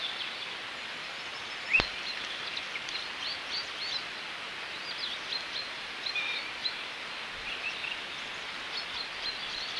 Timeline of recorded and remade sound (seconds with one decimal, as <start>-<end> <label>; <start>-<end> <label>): 0.0-9.8 recorded